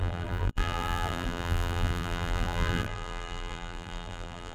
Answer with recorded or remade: remade